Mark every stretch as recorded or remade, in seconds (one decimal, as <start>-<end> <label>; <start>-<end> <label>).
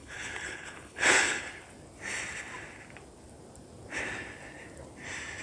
0.0-1.4 remade; 1.4-5.4 recorded